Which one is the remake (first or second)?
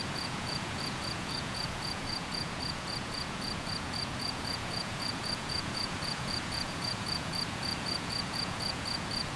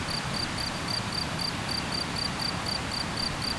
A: first